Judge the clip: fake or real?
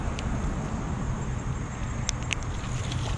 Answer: real